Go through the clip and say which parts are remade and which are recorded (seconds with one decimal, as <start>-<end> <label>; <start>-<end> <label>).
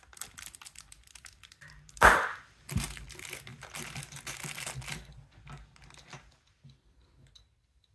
0.0-7.9 recorded